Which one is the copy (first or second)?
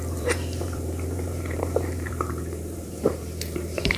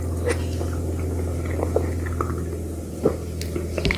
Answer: first